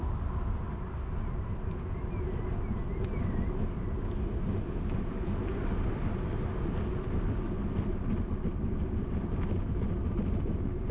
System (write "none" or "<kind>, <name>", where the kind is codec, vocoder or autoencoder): none